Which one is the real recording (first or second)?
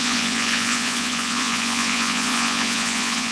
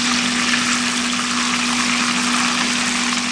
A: second